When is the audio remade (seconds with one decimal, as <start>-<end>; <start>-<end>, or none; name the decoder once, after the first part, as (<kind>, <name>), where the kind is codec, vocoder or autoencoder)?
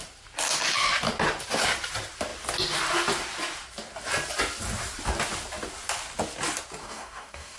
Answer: 6.8-7.6 (codec, DAC)